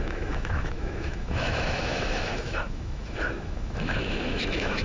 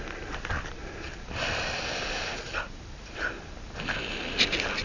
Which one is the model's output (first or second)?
first